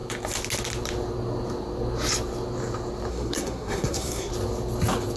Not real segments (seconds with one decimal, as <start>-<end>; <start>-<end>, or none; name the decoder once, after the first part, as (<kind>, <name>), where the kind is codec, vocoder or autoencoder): 3.1-4.3 (codec, SNAC)